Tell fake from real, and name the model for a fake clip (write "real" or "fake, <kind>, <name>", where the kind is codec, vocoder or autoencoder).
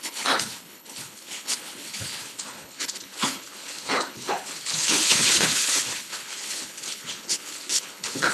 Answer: fake, codec, HILCodec